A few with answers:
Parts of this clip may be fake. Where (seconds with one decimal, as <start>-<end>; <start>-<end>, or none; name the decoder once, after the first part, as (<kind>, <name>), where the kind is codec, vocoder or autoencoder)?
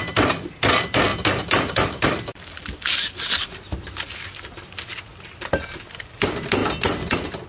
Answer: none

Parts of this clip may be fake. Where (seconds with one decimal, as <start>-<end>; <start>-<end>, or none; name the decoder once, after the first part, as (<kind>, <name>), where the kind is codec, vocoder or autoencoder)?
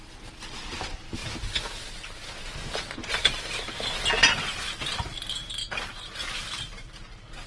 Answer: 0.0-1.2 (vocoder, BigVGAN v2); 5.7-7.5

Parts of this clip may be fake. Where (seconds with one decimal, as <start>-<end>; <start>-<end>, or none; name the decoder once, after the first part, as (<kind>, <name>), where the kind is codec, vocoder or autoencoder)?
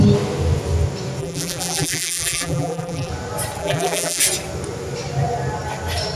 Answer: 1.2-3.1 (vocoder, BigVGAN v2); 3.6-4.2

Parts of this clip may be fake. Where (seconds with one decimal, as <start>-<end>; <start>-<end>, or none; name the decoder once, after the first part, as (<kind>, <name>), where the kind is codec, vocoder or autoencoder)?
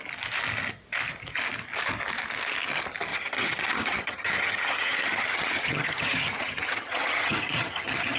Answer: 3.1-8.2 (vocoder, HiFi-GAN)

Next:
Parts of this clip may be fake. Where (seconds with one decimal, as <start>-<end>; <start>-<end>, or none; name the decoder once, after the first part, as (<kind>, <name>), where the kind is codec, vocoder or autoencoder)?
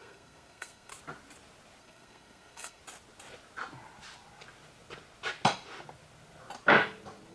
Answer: 0.0-0.9 (codec, SNAC); 1.8-2.8